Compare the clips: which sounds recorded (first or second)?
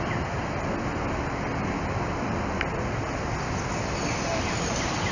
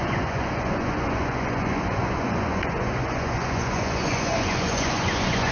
first